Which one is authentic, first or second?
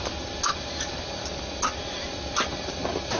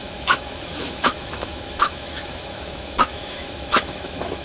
first